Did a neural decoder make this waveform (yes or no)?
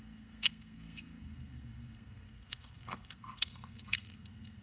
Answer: yes